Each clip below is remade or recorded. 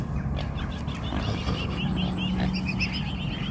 recorded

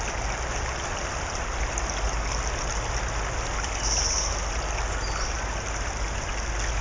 recorded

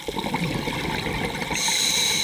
recorded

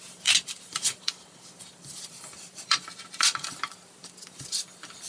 remade